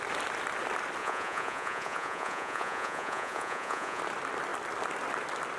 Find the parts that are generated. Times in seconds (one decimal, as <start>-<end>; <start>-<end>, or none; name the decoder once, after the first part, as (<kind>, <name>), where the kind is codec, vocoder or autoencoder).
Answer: 1.0-4.0 (vocoder, Vocos)